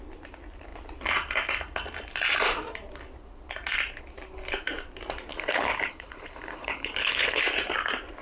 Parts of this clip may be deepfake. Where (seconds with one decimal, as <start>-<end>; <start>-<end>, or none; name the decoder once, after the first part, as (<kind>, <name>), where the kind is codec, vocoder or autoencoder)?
5.3-7.4 (codec, HILCodec)

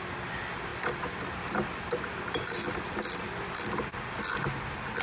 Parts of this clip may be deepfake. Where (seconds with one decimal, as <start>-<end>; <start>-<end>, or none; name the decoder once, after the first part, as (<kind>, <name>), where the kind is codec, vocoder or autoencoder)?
none

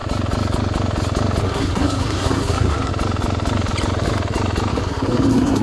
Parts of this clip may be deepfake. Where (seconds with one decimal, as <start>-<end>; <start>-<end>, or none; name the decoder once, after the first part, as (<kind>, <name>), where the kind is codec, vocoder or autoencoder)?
1.4-2.9 (codec, SNAC); 4.7-5.6